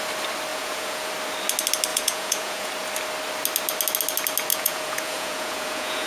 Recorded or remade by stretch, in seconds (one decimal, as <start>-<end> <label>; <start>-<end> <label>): 0.0-0.5 recorded; 0.5-1.1 remade; 1.1-1.9 recorded; 1.9-2.7 remade; 2.7-4.5 recorded; 4.5-6.1 remade